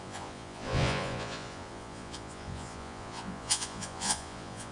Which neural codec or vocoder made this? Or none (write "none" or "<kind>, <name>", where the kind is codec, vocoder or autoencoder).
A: vocoder, Vocos